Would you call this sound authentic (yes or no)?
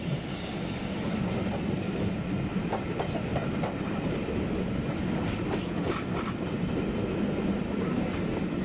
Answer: yes